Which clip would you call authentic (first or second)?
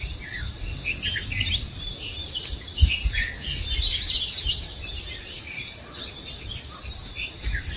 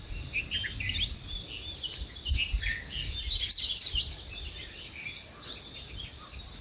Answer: second